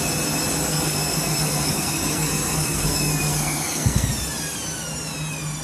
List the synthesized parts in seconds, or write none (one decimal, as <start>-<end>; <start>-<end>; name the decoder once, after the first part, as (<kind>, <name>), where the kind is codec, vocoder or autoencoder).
0.7-4.1 (codec, SNAC)